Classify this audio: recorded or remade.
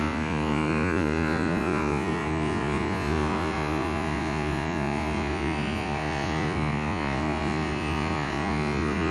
remade